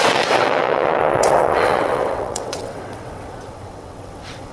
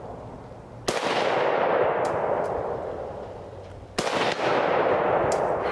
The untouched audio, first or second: second